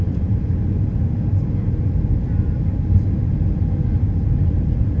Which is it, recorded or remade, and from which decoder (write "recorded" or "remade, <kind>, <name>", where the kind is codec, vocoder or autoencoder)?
recorded